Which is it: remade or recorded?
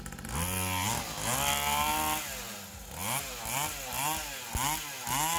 recorded